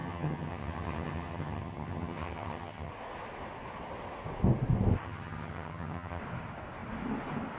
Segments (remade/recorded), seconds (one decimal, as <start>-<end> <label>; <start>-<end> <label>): 0.0-2.9 remade; 2.9-5.0 recorded; 5.0-6.2 remade; 6.2-7.6 recorded